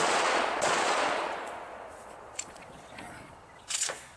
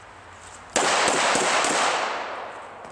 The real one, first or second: second